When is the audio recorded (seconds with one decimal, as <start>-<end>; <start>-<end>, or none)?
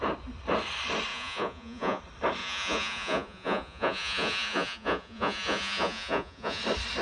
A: 0.0-1.1; 2.0-2.4; 6.6-7.0